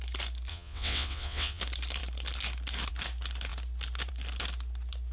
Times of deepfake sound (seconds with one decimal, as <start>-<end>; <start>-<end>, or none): 0.5-1.6

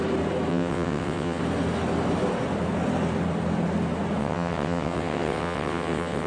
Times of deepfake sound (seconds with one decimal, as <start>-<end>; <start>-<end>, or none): 0.5-1.4; 4.2-6.3

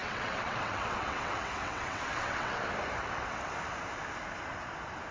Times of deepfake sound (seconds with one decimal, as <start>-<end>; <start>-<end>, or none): 0.0-2.6; 3.0-3.5

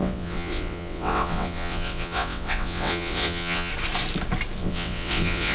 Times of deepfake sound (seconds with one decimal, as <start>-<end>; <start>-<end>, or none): 0.0-3.7; 4.6-5.5

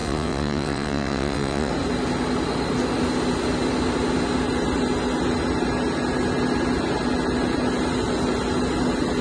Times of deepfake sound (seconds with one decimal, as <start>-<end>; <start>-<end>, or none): 0.0-1.7

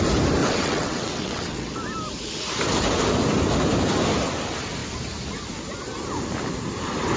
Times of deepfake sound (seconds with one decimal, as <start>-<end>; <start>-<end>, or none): 0.4-1.7

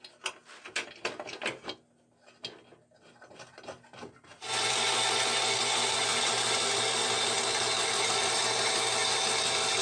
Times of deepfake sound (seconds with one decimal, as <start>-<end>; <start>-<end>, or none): none